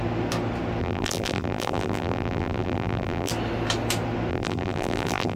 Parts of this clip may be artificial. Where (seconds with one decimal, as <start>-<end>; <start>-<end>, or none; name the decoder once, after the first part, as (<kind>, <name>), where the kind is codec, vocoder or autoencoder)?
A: 0.8-3.3 (vocoder, BigVGAN v2); 4.3-5.4